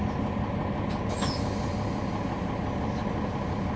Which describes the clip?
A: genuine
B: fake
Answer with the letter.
A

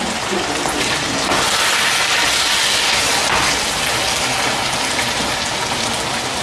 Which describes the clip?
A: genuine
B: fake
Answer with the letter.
A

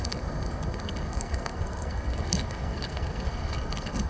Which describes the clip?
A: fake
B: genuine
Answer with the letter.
A